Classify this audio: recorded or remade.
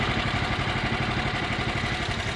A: recorded